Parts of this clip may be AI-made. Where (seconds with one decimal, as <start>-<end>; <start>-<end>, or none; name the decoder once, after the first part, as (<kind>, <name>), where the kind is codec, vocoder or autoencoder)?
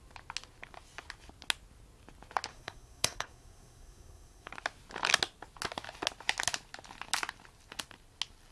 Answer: 2.5-4.5 (codec, SNAC)